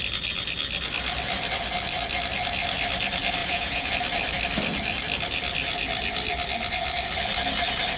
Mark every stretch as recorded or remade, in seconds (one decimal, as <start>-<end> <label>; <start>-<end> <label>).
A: 0.0-3.4 recorded; 3.4-3.9 remade; 3.9-8.0 recorded